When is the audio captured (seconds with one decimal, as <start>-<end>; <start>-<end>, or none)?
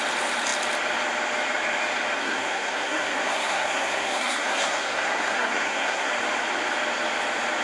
0.0-2.2; 6.1-7.6